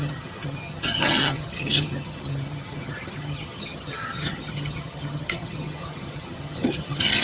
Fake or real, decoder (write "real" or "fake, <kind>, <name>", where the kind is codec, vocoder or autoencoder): fake, vocoder, HiFi-GAN